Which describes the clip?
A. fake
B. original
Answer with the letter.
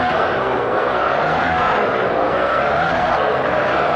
A